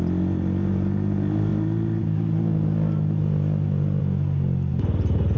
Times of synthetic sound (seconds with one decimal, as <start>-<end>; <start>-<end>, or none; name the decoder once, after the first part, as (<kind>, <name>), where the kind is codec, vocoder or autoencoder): none